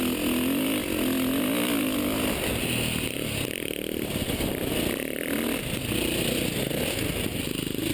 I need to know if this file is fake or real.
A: real